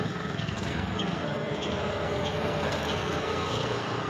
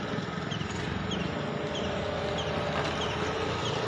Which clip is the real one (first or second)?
second